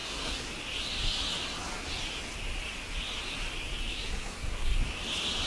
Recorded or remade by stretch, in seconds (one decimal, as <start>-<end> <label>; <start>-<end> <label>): 0.0-0.5 remade; 0.5-3.9 recorded; 3.9-4.8 remade; 4.8-5.5 recorded